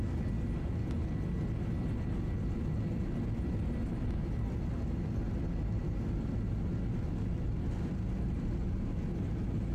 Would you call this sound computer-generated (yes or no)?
no